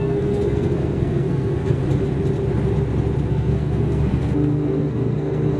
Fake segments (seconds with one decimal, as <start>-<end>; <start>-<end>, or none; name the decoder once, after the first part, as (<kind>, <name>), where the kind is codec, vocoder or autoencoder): 0.0-1.8 (codec, SNAC); 3.3-5.6